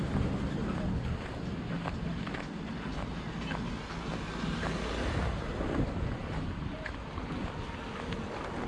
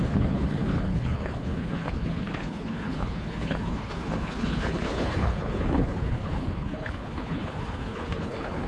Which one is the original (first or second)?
first